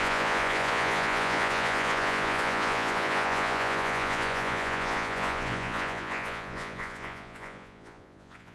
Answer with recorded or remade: remade